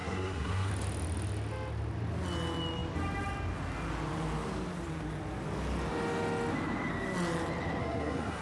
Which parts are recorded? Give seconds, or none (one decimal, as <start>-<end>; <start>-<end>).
0.7-7.8